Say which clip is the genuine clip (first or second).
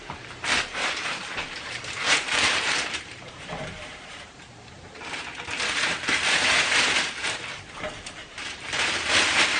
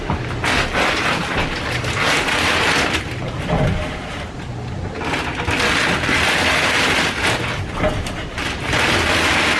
second